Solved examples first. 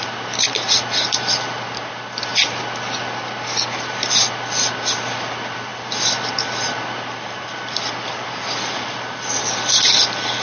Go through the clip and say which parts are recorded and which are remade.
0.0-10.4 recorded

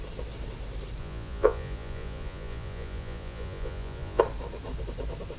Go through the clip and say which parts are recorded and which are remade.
0.0-1.0 recorded; 1.0-4.2 remade; 4.2-5.4 recorded

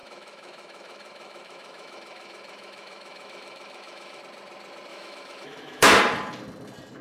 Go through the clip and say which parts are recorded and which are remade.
0.0-4.2 remade; 4.2-4.9 recorded; 4.9-6.0 remade; 6.0-7.0 recorded

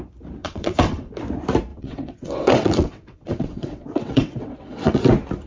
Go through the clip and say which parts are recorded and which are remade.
0.0-0.4 recorded; 0.4-1.1 remade; 1.1-1.7 recorded; 1.7-5.0 remade; 5.0-5.5 recorded

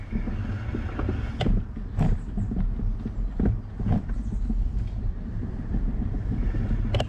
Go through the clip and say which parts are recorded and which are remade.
0.0-2.1 recorded; 2.1-6.4 remade; 6.4-7.1 recorded